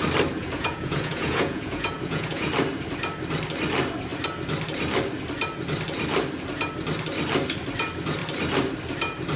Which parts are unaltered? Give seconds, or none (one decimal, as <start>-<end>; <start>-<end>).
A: 0.0-0.4; 2.5-9.4

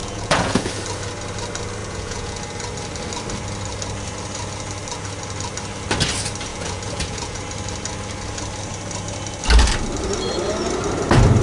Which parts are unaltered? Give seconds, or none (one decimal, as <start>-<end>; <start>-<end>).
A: 0.7-1.8; 2.4-6.5; 7.4-11.4

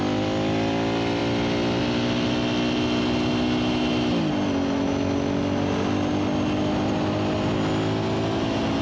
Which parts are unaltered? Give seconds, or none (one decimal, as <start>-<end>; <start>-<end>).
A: 0.0-8.8

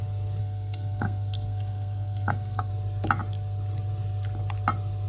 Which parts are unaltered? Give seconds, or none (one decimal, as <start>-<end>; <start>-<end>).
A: 0.0-0.4; 2.7-5.1